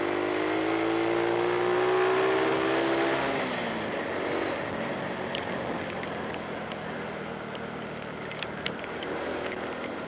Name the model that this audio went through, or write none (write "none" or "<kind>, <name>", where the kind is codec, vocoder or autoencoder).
none